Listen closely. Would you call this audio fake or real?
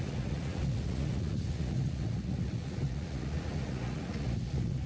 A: fake